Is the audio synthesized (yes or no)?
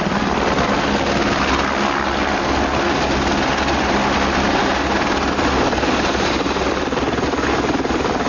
no